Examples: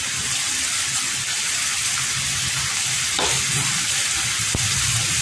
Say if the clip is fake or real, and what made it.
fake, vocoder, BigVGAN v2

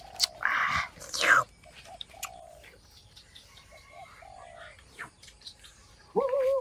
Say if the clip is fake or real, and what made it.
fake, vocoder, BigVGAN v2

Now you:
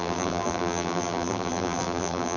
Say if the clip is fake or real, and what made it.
fake, vocoder, BigVGAN v2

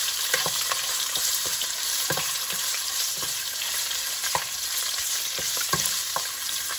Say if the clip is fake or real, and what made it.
fake, vocoder, BigVGAN v2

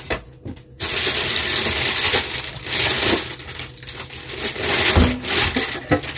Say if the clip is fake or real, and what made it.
real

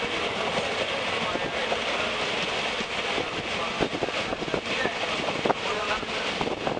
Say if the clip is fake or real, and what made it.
real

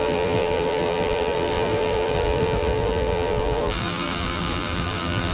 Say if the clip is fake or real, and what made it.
fake, vocoder, BigVGAN v2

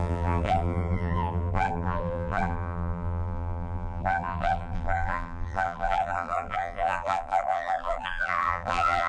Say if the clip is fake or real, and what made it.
fake, vocoder, BigVGAN v2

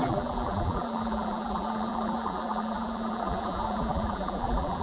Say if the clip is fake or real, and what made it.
fake, vocoder, BigVGAN v2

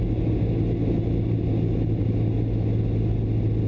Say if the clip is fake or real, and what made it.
real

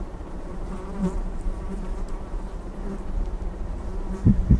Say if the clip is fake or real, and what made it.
fake, vocoder, BigVGAN v2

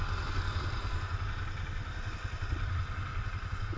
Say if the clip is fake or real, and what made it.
fake, vocoder, BigVGAN v2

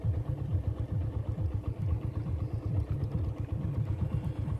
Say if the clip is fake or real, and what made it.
real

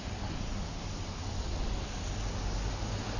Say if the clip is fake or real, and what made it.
real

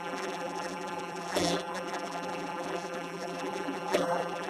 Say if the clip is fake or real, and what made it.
fake, vocoder, BigVGAN v2